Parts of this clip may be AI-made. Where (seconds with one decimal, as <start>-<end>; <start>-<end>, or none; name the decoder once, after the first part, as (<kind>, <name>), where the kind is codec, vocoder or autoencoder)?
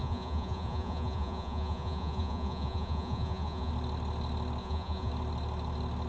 0.0-3.7 (vocoder, Vocos); 4.6-5.1